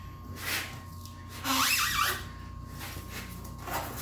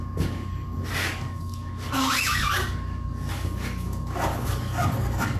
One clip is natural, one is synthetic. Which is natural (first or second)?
first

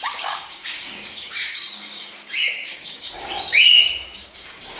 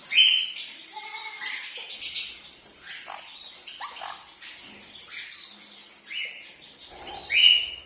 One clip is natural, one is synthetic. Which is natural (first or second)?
second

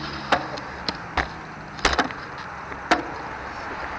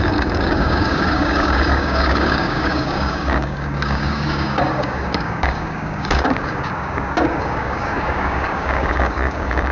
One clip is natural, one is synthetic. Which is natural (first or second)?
first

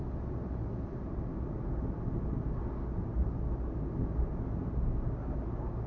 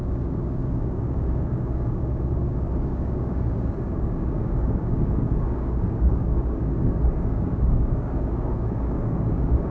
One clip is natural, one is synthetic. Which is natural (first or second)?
first